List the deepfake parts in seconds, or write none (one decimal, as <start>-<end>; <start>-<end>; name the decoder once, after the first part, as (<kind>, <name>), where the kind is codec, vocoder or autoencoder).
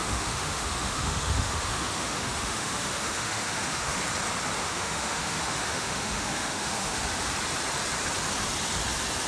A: 0.0-4.0 (autoencoder, DAC-VAE); 4.6-7.0